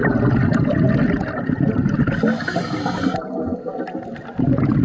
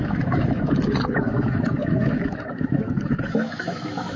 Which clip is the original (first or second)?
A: first